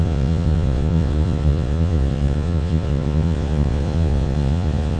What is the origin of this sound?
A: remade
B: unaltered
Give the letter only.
A